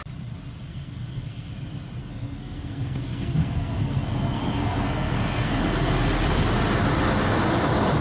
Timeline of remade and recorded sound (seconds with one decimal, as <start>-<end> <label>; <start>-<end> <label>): 0.0-0.7 recorded; 0.7-1.5 remade; 1.5-2.0 recorded; 2.0-5.9 remade; 5.9-8.0 recorded